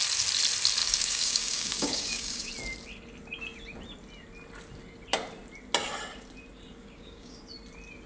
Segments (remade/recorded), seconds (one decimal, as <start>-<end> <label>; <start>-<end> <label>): 0.0-0.8 recorded; 0.8-2.5 remade; 2.5-6.8 recorded; 6.8-7.4 remade; 7.4-8.1 recorded